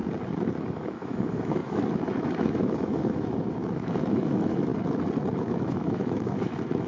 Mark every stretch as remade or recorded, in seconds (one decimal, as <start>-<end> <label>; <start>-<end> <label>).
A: 0.0-0.6 recorded; 0.6-4.7 remade; 4.7-5.4 recorded; 5.4-6.9 remade